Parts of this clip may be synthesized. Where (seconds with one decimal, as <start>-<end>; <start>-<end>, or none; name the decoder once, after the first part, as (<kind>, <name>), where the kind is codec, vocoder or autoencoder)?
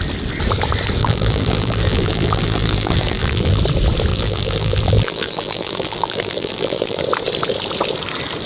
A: 1.0-3.6 (vocoder, BigVGAN v2); 4.1-7.0